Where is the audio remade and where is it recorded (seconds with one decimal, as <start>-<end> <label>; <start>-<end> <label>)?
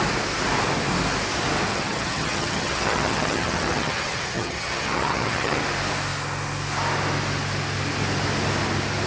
0.0-1.7 recorded; 1.7-5.6 remade; 5.6-9.1 recorded